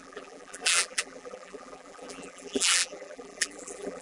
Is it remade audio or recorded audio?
remade